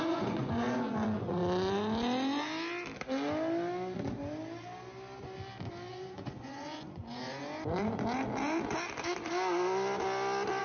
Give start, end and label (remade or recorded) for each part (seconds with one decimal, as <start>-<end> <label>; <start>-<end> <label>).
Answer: 0.0-1.4 remade; 1.4-5.9 recorded; 5.9-7.4 remade; 7.4-10.6 recorded